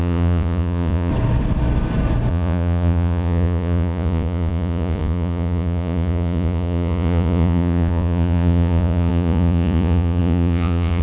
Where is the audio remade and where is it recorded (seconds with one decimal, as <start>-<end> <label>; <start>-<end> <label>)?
0.0-1.1 remade; 1.1-2.3 recorded; 2.3-11.0 remade